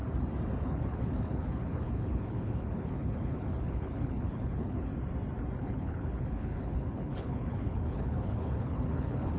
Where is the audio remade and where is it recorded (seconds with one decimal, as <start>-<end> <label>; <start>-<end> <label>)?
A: 0.0-0.6 recorded; 0.6-4.9 remade; 4.9-5.6 recorded; 5.6-9.4 remade